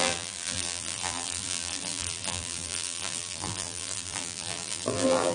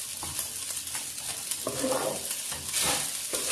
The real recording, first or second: second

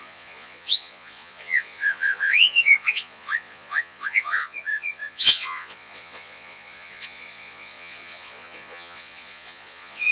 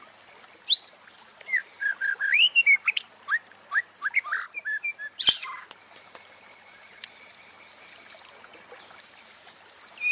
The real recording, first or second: second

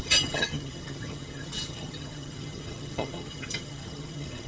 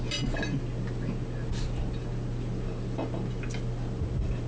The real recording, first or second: second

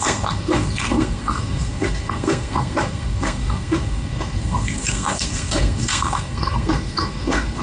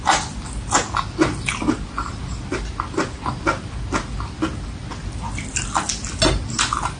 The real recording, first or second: second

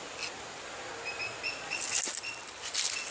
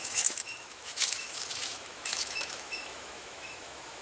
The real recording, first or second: first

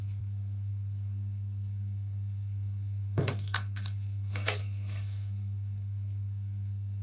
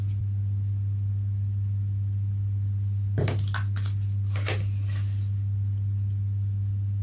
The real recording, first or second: second